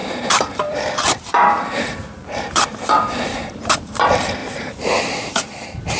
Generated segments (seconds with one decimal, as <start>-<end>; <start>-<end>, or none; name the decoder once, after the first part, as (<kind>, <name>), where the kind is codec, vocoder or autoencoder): 0.0-6.0 (vocoder, BigVGAN v2)